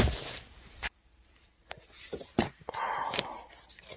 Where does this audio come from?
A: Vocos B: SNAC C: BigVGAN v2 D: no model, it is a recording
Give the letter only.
C